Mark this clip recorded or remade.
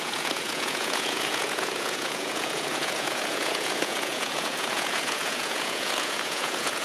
remade